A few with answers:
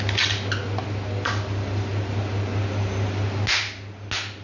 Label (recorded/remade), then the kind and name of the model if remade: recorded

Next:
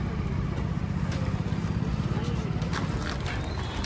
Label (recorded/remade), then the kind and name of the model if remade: recorded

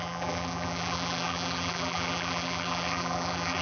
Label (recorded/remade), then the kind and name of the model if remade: remade, vocoder, BigVGAN v2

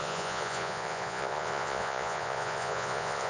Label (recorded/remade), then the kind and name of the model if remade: remade, vocoder, Vocos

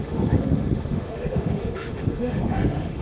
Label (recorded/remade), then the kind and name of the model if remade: remade, autoencoder, DAC-VAE